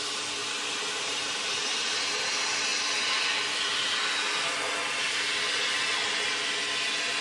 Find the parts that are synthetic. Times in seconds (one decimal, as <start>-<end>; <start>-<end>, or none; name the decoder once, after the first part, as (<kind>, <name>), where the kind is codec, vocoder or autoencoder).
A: 0.4-1.5 (vocoder, BigVGAN v2)